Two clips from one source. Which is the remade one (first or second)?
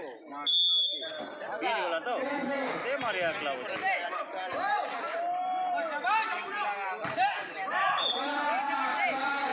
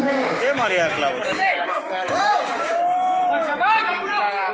second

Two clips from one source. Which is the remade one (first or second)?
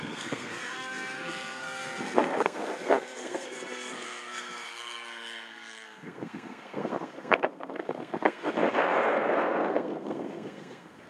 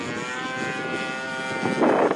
first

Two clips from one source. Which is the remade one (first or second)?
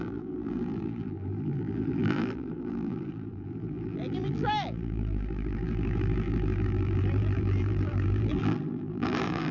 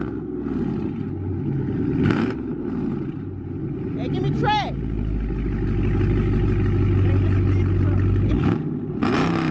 first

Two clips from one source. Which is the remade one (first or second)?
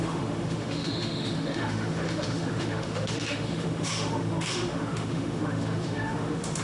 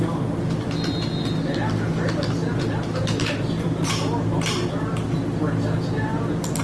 first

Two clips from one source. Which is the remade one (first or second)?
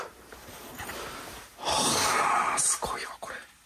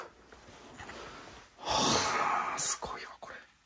first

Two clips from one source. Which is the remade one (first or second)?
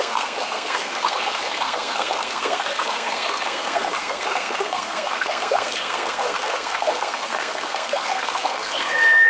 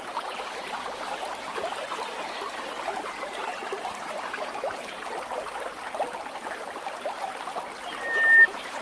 first